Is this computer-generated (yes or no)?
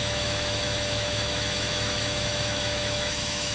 yes